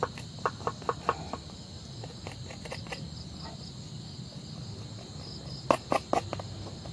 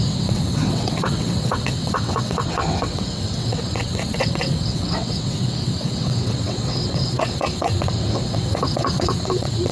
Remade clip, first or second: second